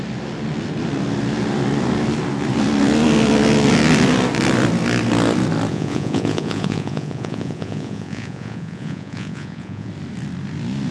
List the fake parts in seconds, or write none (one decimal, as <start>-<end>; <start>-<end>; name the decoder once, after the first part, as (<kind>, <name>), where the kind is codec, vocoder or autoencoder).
5.7-9.9 (vocoder, Vocos)